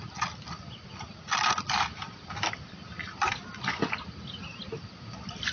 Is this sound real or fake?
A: real